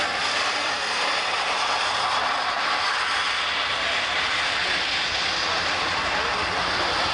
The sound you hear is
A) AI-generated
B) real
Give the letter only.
B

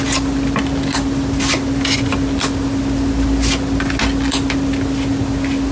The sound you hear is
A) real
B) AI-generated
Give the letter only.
A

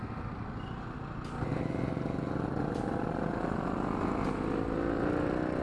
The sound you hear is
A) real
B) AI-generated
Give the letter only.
A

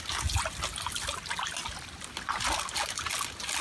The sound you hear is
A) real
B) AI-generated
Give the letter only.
A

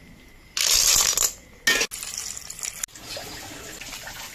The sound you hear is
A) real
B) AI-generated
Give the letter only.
A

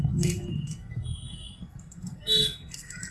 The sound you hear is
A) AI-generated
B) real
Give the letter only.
A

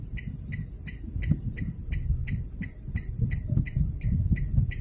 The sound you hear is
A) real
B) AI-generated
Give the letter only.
A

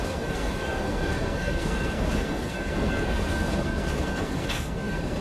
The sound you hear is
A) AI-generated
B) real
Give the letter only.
A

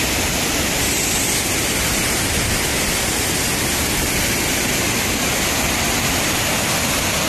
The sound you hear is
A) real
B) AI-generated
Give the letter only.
A